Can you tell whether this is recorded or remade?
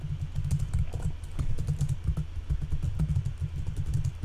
recorded